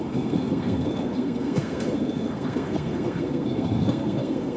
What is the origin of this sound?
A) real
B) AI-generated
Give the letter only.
B